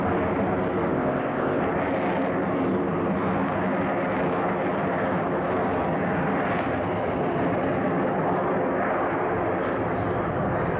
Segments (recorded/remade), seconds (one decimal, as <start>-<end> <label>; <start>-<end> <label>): 0.0-0.9 recorded; 0.9-1.6 remade; 1.6-10.8 recorded